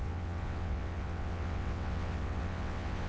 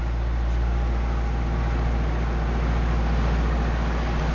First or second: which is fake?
first